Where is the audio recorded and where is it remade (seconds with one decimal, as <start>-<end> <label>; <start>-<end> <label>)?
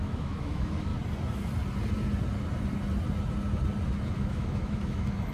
0.0-0.9 remade; 0.9-4.1 recorded; 4.1-5.3 remade